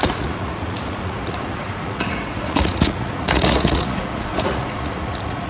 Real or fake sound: fake